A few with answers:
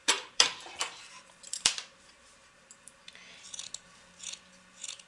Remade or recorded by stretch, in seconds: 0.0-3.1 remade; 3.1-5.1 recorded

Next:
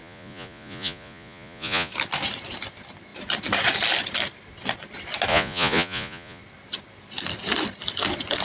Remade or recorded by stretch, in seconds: 0.0-1.9 remade; 1.9-5.3 recorded; 5.3-6.4 remade; 6.4-8.4 recorded

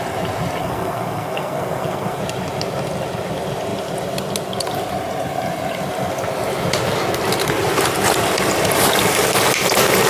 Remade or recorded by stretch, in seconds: 0.0-0.6 recorded; 0.6-2.2 remade; 2.2-10.1 recorded

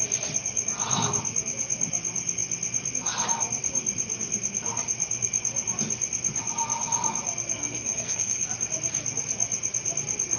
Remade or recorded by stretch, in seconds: 0.0-7.6 recorded; 7.6-8.5 remade; 8.5-10.4 recorded

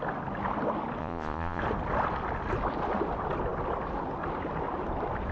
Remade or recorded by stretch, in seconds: 0.0-1.0 recorded; 1.0-1.6 remade; 1.6-5.3 recorded

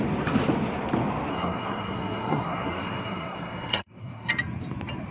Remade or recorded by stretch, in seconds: 0.0-1.3 recorded; 1.3-4.3 remade; 4.3-5.1 recorded

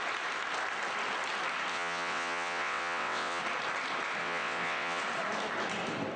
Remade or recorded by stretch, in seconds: 0.0-1.7 recorded; 1.7-3.4 remade; 3.4-4.2 recorded; 4.2-5.0 remade; 5.0-6.2 recorded

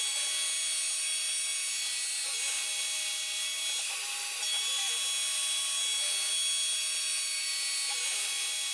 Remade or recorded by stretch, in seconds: 0.0-8.7 recorded